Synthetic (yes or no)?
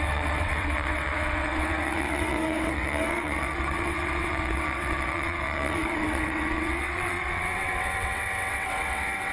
yes